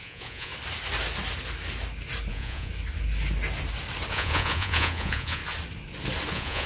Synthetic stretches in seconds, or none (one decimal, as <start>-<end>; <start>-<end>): 0.0-0.5; 2.3-2.7; 4.1-5.4; 6.3-6.7

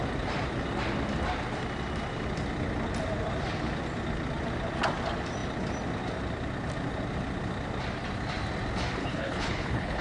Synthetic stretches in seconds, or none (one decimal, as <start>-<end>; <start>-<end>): 9.0-10.0

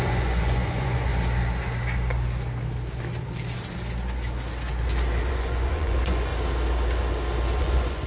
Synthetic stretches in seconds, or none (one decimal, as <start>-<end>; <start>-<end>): 0.0-1.1; 5.3-6.3; 7.6-8.1